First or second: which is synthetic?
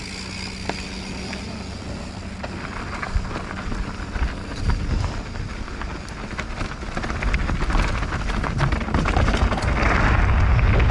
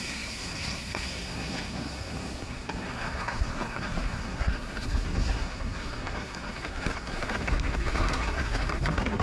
second